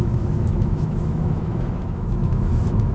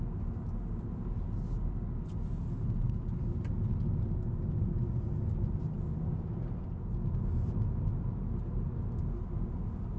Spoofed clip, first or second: first